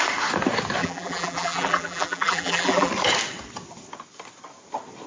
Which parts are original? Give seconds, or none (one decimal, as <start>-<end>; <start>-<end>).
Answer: 0.0-0.8; 2.9-5.1

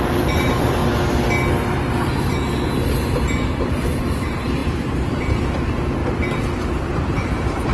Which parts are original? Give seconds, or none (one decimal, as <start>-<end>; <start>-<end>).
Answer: 0.8-3.6; 6.0-6.5

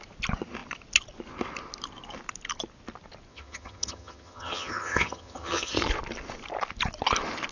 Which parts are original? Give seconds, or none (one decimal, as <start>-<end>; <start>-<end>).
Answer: 0.0-3.3; 5.7-7.5

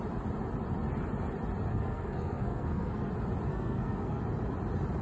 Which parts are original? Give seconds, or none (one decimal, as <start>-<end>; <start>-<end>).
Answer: 0.0-1.7; 3.1-3.5; 4.2-5.0

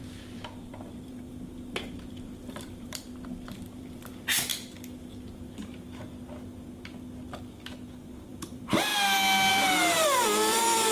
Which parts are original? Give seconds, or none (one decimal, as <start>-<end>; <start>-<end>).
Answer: 4.5-8.0; 8.9-9.5

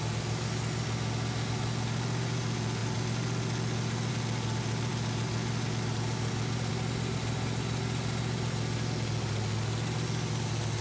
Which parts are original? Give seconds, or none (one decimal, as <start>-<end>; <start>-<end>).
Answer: 0.0-10.8